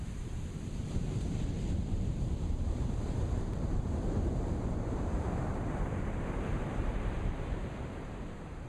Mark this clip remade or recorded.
remade